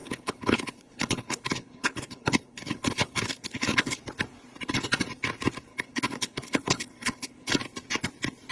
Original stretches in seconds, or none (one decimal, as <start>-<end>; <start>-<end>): 4.0-5.7; 7.5-8.5